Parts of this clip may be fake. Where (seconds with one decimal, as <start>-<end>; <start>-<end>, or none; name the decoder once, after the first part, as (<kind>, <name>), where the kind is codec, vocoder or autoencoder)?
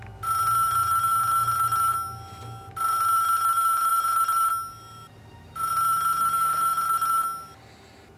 none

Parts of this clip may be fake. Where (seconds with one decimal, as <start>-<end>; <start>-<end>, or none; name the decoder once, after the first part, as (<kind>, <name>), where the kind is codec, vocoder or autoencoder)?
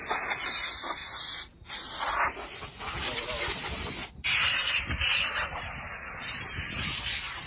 4.0-5.6 (vocoder, BigVGAN v2)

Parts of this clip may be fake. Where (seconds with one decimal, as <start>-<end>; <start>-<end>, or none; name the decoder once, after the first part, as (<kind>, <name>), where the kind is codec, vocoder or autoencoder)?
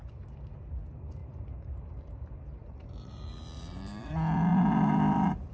1.2-4.1 (vocoder, BigVGAN v2); 4.5-5.5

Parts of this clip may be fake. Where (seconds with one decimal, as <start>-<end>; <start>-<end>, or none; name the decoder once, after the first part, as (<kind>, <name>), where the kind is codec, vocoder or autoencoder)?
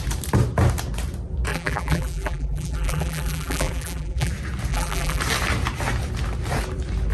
1.5-4.3 (vocoder, BigVGAN v2); 4.7-5.2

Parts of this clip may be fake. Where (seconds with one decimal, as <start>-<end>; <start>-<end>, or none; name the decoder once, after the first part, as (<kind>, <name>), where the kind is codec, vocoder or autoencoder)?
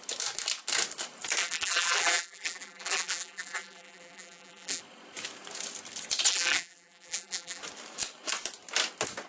1.4-4.8 (vocoder, BigVGAN v2); 6.3-7.6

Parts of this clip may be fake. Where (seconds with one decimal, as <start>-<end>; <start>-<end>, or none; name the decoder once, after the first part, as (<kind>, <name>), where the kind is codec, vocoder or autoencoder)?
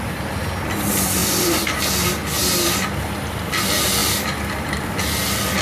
1.2-1.8 (vocoder, BigVGAN v2)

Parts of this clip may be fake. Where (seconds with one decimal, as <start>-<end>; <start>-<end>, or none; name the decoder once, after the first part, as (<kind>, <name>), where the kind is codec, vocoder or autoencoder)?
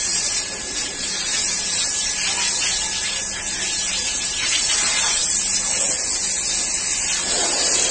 0.0-2.2 (vocoder, BigVGAN v2); 3.0-5.2; 7.3-7.9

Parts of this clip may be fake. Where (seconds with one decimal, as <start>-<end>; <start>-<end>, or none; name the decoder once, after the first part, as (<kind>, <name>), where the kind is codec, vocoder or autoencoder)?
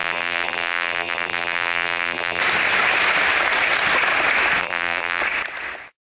0.0-2.4 (vocoder, BigVGAN v2); 4.6-5.2